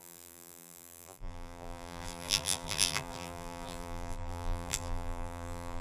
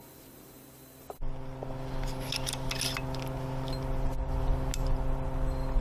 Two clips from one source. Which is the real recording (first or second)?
second